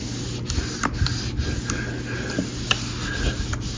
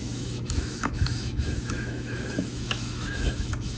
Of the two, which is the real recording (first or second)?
first